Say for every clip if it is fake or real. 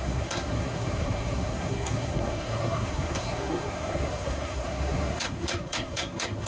fake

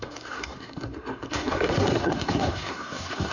fake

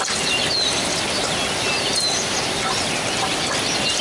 real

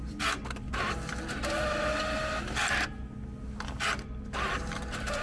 real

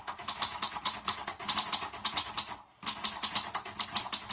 real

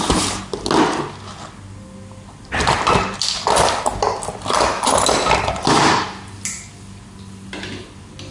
real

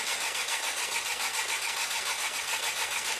fake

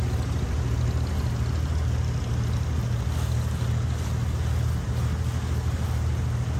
real